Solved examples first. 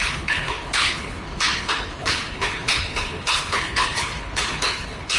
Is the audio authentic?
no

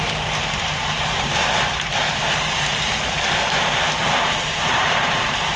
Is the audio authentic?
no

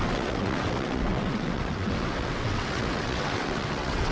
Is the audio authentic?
no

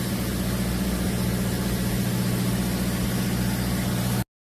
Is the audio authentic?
yes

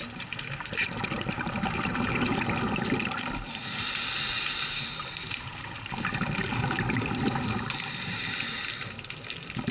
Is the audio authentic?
yes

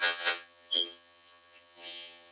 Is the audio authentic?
no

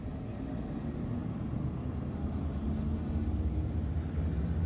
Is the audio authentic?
yes